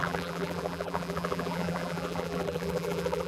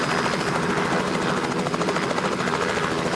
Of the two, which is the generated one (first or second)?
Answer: first